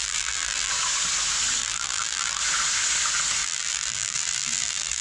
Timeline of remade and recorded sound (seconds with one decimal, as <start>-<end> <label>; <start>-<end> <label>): 0.0-0.7 remade; 0.7-1.6 recorded; 1.6-2.4 remade; 2.4-3.4 recorded; 3.4-5.0 remade